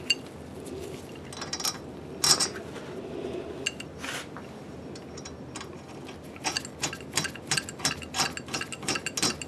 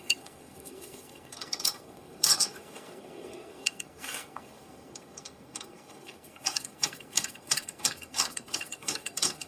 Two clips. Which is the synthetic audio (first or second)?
second